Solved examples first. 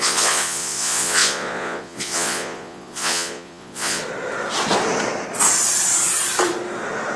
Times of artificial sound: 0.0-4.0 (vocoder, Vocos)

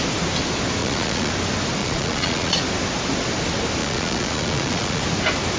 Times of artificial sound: 0.8-1.3 (vocoder, Vocos); 1.8-2.6; 3.8-5.0

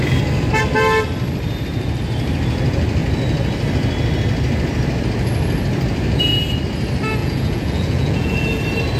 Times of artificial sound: 7.2-8.6 (vocoder, Vocos)

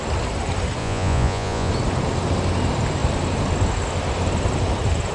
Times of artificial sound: 0.8-1.7 (vocoder, Vocos)

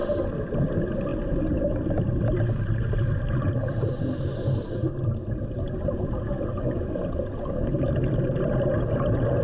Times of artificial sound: none

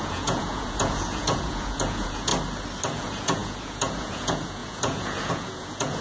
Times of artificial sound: 0.0-2.3 (vocoder, Vocos); 3.0-6.0

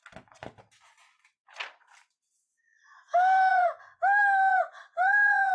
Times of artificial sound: 3.5-4.0 (vocoder, Vocos); 4.5-5.5

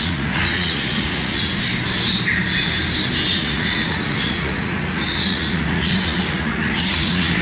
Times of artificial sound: 0.0-1.5 (vocoder, Vocos); 3.3-7.4